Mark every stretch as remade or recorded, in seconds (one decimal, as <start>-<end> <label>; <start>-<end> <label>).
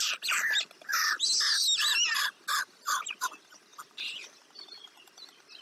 0.0-5.6 recorded